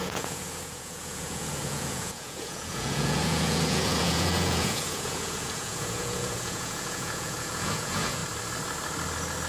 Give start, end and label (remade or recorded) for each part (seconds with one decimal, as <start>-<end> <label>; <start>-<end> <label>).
0.0-8.2 remade; 8.2-9.5 recorded